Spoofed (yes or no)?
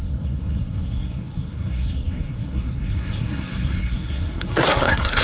yes